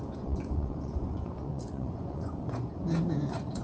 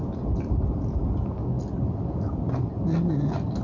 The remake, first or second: first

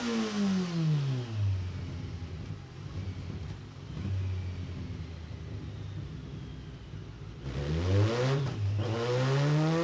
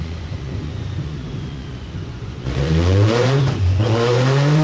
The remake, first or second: second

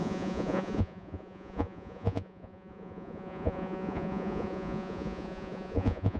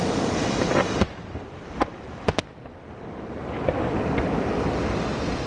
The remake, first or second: first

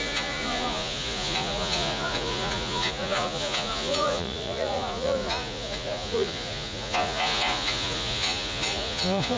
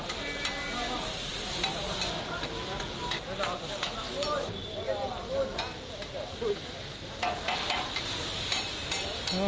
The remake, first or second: first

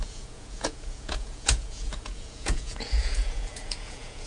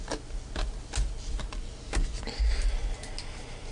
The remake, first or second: first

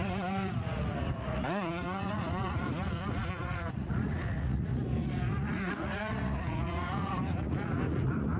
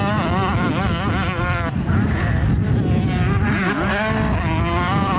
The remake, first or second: first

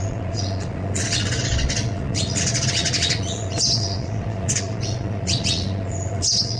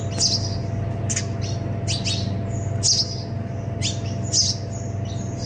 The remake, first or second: first